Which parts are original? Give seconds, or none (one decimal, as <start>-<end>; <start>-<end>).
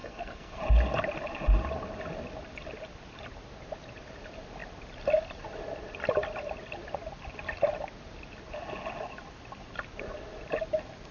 0.6-11.1